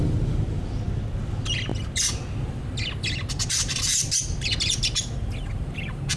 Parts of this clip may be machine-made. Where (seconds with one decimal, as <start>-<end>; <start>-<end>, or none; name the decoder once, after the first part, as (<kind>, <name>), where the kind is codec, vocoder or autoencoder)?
3.9-4.4 (vocoder, BigVGAN v2)